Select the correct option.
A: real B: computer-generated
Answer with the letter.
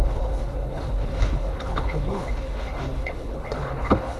B